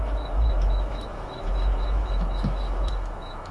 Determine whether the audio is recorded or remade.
remade